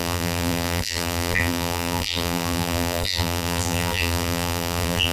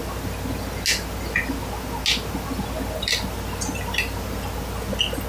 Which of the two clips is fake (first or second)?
first